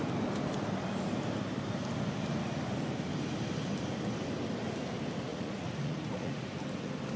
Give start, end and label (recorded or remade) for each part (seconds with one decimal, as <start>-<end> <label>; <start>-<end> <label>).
0.0-5.3 recorded; 5.3-6.5 remade; 6.5-7.2 recorded